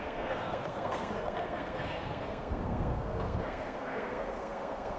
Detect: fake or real fake